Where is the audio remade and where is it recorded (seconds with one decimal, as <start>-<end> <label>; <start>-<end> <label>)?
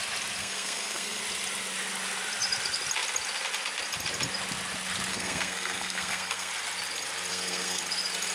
0.0-0.4 recorded; 0.4-1.2 remade; 1.2-5.1 recorded; 5.1-6.5 remade; 6.5-7.3 recorded; 7.3-7.8 remade; 7.8-8.3 recorded